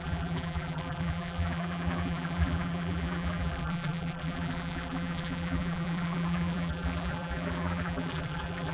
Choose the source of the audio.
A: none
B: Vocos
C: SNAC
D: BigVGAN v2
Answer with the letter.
D